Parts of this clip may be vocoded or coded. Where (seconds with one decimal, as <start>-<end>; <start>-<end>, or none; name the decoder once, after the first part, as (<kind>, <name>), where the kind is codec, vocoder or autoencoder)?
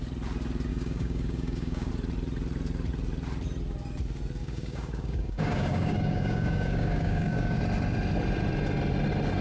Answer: 0.7-1.9 (codec, DAC); 4.4-7.6